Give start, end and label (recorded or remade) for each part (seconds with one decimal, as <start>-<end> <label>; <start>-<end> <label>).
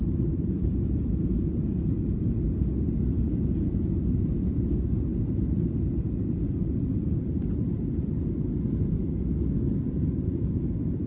0.0-7.7 remade; 7.7-9.9 recorded; 9.9-11.1 remade